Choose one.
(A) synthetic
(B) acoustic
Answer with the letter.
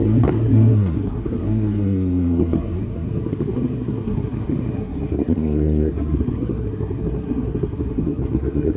A